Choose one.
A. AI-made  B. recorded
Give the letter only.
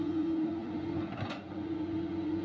A